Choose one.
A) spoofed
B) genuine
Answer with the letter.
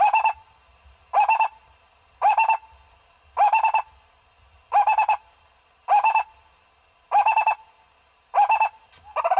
B